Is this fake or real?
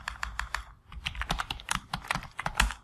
real